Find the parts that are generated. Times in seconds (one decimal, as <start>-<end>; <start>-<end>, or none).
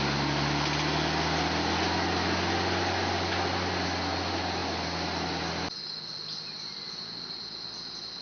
none